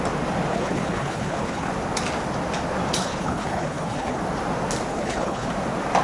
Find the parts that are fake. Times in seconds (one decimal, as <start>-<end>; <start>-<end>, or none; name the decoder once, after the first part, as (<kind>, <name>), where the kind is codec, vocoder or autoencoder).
0.5-1.7 (codec, HILCodec); 3.0-4.2; 4.9-5.5